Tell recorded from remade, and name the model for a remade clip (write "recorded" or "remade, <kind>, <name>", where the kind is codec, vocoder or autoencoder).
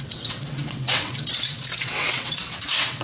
remade, vocoder, WaveNeXt